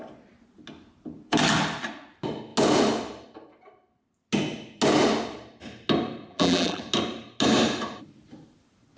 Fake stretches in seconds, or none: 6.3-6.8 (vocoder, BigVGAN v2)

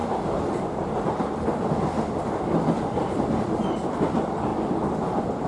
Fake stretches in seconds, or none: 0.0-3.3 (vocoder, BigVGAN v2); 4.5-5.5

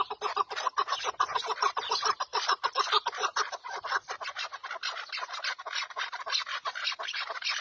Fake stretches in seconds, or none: 5.6-7.6 (vocoder, BigVGAN v2)

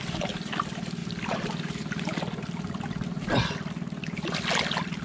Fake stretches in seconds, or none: none

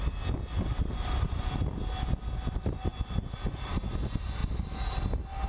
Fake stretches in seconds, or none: 4.4-5.0 (vocoder, BigVGAN v2)

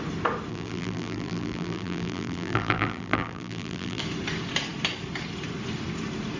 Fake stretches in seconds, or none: 0.5-4.0 (vocoder, BigVGAN v2)